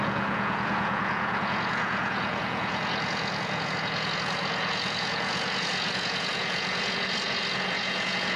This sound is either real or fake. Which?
fake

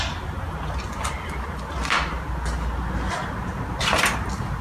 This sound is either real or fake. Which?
real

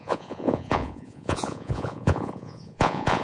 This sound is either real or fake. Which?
fake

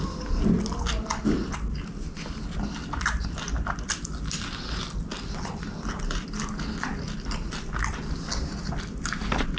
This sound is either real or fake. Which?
real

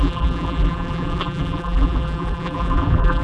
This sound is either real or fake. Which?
fake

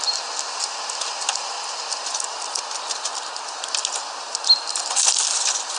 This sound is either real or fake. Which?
real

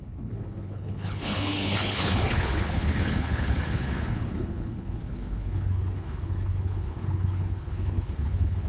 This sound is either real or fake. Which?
fake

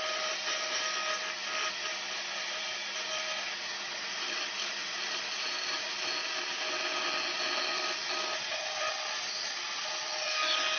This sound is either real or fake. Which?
real